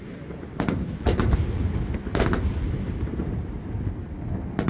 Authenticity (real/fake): real